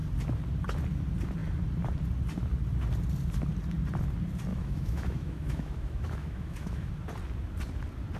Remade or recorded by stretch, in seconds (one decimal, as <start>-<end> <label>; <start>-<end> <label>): 0.0-4.5 recorded; 4.5-6.9 remade; 6.9-8.2 recorded